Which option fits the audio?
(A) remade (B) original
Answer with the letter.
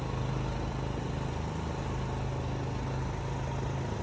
B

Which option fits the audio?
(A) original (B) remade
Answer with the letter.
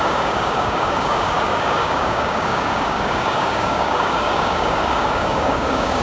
B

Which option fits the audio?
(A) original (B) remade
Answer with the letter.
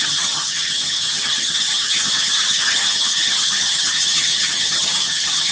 B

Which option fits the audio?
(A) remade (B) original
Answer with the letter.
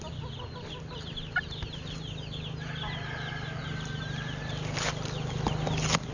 B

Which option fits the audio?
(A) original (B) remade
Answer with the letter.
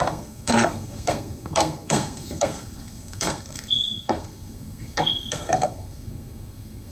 B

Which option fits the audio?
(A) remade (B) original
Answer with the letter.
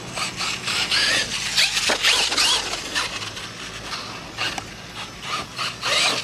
B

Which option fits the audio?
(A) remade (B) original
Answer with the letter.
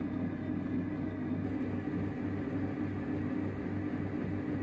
B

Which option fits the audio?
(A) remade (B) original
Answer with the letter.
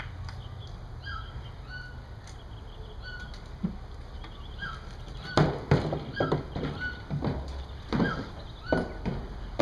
B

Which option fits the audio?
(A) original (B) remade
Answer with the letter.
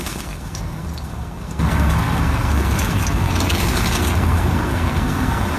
B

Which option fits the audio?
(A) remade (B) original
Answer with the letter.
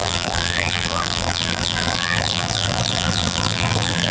A